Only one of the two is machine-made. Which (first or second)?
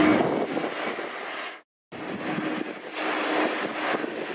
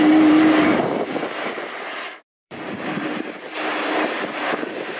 second